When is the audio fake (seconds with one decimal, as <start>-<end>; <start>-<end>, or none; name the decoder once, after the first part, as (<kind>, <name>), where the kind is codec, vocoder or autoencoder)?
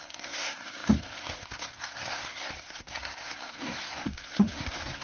0.0-5.0 (codec, SNAC)